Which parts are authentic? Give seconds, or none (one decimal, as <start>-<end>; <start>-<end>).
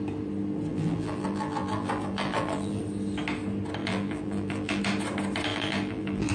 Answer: 0.0-0.7; 2.8-3.8; 4.8-5.5